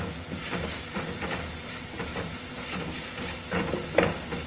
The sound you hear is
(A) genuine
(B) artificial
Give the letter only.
A